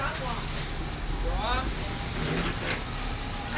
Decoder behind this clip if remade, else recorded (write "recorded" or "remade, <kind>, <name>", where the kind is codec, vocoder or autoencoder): recorded